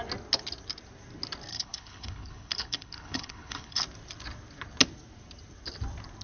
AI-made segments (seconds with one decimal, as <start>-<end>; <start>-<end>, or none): 1.5-3.8